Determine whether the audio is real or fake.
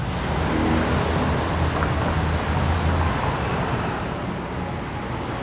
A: real